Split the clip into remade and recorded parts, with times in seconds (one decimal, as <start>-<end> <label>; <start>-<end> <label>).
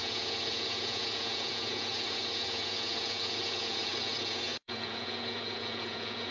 0.0-6.3 remade